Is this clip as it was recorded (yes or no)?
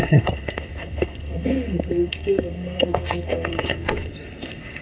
no